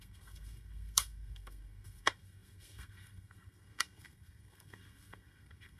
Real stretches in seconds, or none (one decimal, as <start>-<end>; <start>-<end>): none